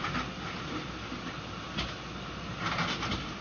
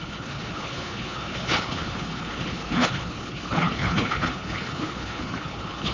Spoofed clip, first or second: second